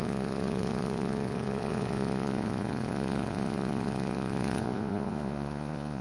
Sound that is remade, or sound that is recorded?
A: remade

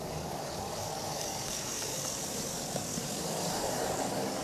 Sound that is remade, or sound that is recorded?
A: remade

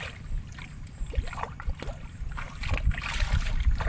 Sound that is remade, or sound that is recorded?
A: recorded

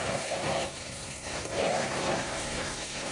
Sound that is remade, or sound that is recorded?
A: remade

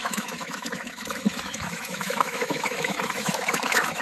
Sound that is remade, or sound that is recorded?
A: remade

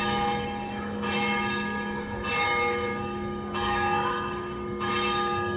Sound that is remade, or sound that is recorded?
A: remade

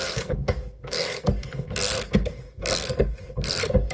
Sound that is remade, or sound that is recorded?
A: remade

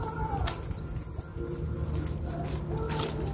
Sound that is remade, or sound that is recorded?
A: recorded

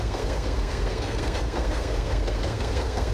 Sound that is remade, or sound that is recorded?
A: remade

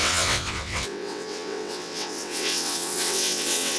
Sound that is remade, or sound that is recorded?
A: remade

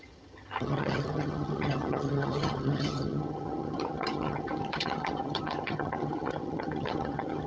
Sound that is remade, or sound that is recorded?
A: remade